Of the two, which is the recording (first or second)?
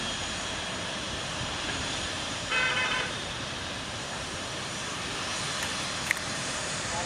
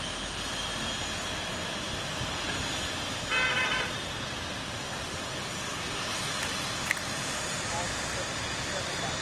second